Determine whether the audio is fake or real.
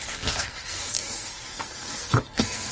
fake